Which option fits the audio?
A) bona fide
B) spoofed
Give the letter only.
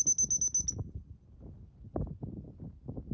A